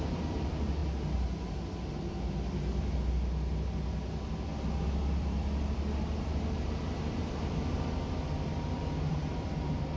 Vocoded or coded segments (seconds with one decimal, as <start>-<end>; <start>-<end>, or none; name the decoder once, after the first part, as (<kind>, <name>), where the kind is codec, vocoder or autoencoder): 0.0-0.8 (vocoder, BigVGAN v2); 5.2-10.0